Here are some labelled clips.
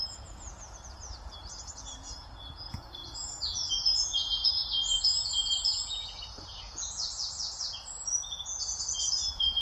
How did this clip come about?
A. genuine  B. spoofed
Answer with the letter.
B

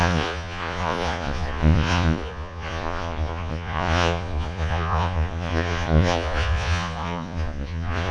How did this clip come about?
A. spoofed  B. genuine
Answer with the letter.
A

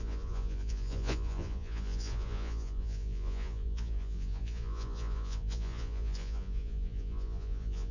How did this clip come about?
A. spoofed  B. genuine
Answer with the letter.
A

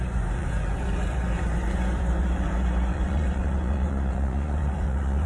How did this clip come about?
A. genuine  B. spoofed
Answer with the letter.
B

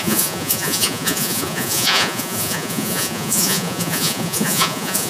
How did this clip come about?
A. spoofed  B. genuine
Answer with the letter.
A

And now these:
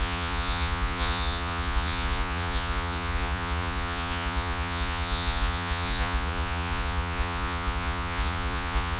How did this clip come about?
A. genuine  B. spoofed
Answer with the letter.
B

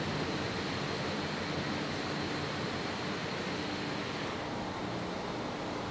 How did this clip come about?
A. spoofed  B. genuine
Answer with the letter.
B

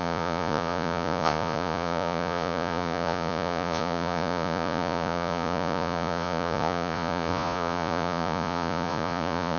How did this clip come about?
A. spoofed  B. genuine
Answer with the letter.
A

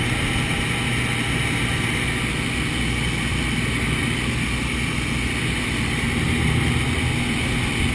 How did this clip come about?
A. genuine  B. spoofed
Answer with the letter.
A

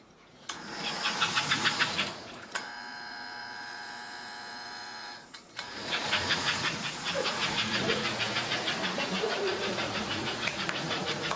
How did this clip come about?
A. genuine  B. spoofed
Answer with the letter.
B